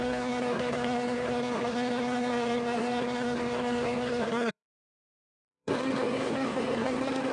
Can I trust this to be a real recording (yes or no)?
no